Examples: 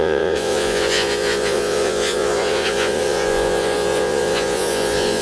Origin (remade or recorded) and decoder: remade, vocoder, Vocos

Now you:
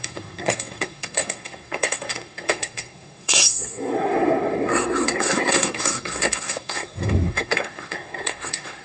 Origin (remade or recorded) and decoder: remade, codec, SNAC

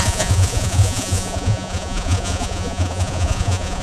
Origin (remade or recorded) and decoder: remade, vocoder, Vocos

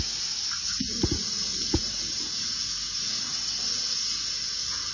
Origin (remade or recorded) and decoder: recorded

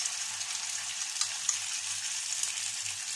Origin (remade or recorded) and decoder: recorded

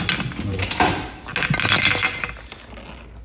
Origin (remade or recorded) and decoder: recorded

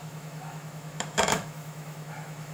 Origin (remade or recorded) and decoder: remade, autoencoder, DAC-VAE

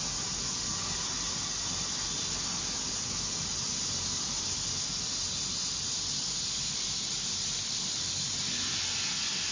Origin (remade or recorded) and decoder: recorded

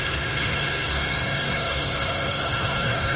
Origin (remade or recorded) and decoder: remade, codec, SNAC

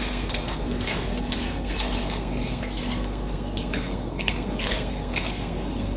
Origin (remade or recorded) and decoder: remade, codec, SNAC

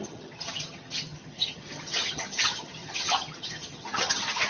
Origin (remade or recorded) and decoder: remade, vocoder, HiFi-GAN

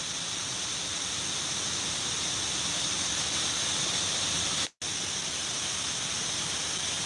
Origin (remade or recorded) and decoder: recorded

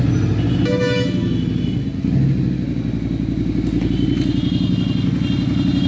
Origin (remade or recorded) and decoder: recorded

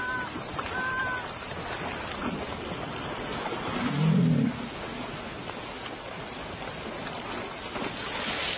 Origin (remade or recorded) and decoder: recorded